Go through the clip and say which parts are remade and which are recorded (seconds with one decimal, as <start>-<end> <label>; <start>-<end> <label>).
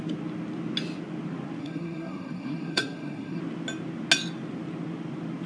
0.0-1.6 recorded; 1.6-3.4 remade; 3.4-5.5 recorded